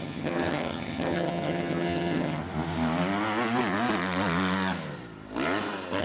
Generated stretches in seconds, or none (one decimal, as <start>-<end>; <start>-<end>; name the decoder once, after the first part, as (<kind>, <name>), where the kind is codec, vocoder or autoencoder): 0.0-2.4 (vocoder, HiFi-GAN)